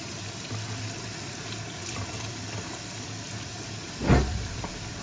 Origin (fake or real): real